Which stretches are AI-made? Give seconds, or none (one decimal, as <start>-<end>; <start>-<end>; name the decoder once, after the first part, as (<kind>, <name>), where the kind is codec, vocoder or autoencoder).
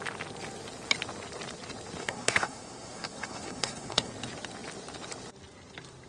2.0-4.1 (codec, SNAC)